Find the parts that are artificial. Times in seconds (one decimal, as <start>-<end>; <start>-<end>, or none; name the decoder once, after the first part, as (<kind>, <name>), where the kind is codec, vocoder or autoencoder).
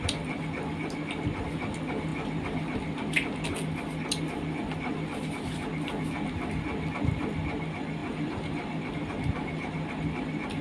8.0-8.9 (vocoder, BigVGAN v2)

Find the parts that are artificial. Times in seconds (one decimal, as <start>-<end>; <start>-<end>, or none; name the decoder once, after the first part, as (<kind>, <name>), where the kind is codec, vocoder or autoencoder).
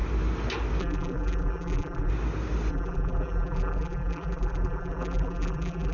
0.8-2.1 (vocoder, BigVGAN v2); 2.7-5.9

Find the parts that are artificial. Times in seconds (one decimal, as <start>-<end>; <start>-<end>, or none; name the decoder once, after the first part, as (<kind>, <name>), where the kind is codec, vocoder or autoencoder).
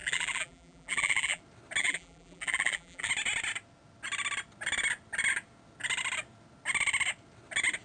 0.0-1.4 (vocoder, BigVGAN v2); 1.8-3.1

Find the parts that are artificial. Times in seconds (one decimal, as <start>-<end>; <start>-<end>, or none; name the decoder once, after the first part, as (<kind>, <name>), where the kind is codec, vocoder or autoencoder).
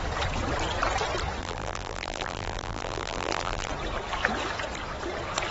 1.4-3.7 (vocoder, BigVGAN v2)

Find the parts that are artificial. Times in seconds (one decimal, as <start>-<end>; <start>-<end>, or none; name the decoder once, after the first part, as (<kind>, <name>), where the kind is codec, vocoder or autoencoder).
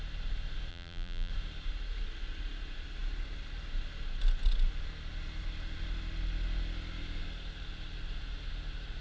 0.7-1.3 (vocoder, BigVGAN v2)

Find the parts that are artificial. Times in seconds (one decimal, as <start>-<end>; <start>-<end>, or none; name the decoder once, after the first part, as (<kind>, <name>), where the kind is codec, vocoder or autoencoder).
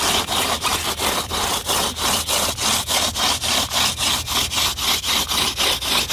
none